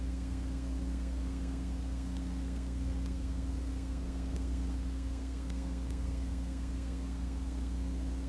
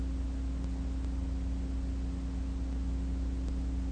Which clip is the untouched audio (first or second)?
second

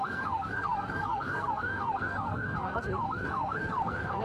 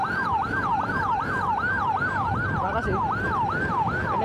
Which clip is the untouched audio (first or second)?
second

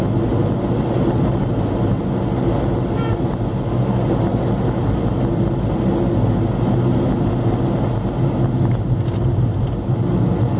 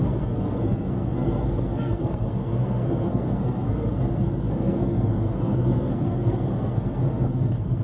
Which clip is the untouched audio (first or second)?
first